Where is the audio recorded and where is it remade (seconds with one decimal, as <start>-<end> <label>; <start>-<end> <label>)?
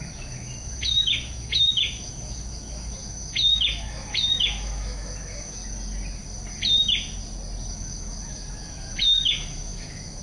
0.0-5.6 remade; 5.6-7.7 recorded; 7.7-10.2 remade